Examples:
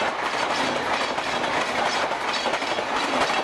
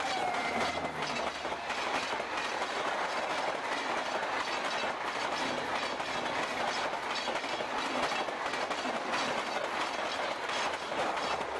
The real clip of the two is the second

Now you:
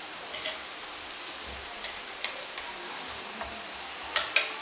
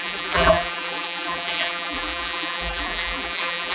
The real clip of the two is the first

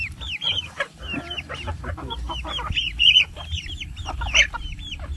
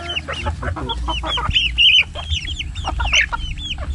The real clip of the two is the second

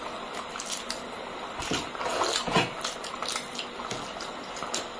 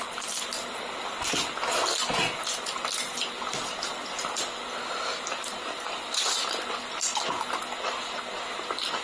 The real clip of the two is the second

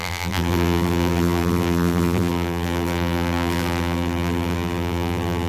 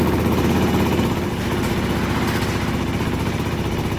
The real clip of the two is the second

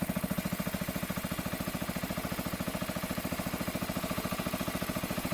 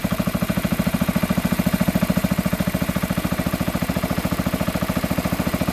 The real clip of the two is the first